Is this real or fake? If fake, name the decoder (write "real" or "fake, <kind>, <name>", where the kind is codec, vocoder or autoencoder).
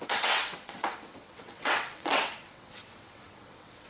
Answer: fake, vocoder, WaveNeXt